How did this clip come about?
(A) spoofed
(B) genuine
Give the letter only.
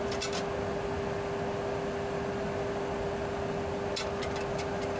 B